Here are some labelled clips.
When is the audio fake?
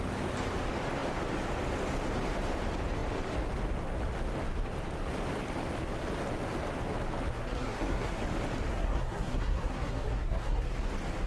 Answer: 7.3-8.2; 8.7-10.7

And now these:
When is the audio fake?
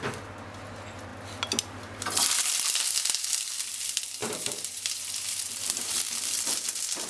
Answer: 4.2-6.1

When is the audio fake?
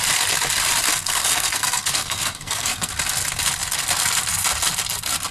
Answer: 0.9-2.9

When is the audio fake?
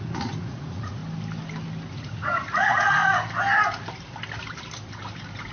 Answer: 0.0-1.0; 1.9-3.0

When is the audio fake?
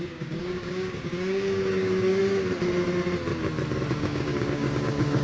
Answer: 0.0-2.2; 3.9-5.2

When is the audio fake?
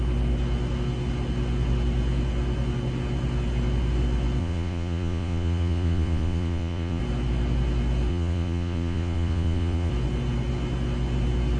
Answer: 4.4-7.0; 8.1-9.9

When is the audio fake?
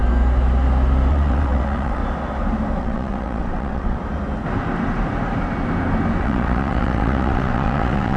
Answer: 1.1-2.0; 2.8-4.0; 6.2-8.2